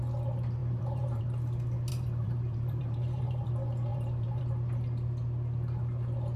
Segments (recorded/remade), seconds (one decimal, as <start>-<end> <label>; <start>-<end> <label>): 0.0-0.6 recorded; 0.6-1.2 remade; 1.2-1.9 recorded; 1.9-3.5 remade; 3.5-3.9 recorded; 3.9-4.4 remade; 4.4-6.4 recorded

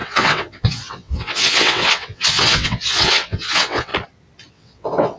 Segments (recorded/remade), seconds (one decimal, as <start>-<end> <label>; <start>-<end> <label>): 0.0-3.9 remade; 3.9-4.5 recorded; 4.5-5.2 remade

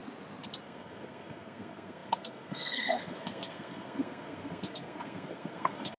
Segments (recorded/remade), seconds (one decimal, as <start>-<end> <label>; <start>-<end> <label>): 0.0-0.6 recorded; 0.6-6.0 remade

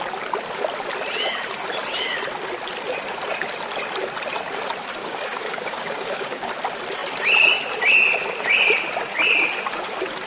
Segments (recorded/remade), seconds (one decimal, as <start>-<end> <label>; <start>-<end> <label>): 0.0-5.0 recorded; 5.0-6.5 remade; 6.5-10.3 recorded

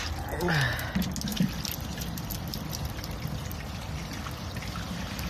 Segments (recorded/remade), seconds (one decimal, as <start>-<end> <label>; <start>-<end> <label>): 0.0-1.3 recorded; 1.3-2.9 remade; 2.9-5.3 recorded